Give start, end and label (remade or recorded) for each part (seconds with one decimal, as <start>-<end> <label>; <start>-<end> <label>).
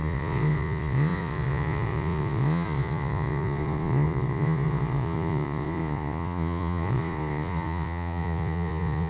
0.0-9.1 remade